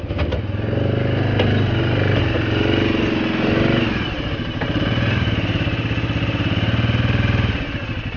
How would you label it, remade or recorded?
recorded